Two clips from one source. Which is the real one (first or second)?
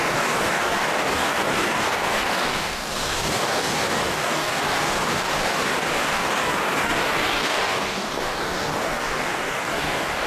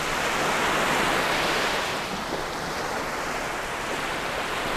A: second